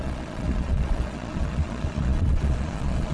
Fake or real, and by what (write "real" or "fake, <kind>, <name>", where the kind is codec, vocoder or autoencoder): fake, vocoder, Vocos